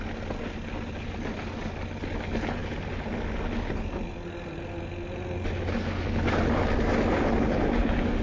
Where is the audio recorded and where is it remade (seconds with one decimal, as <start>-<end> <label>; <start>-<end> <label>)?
0.0-8.2 recorded